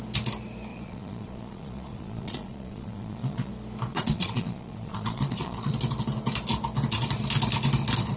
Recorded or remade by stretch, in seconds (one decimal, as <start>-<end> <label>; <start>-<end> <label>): 0.0-0.7 recorded; 0.7-3.5 remade; 3.5-3.9 recorded; 3.9-5.7 remade; 5.7-8.2 recorded